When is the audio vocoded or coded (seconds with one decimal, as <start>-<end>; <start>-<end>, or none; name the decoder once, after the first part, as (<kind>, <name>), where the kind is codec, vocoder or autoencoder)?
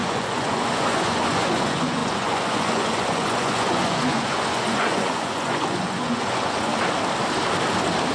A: 0.0-6.7 (vocoder, Vocos)